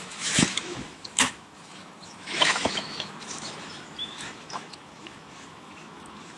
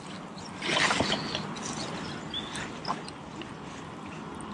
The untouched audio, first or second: second